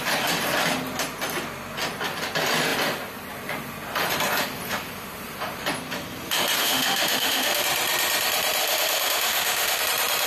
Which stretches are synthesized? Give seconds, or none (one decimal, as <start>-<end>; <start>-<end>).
6.6-7.6; 8.6-9.8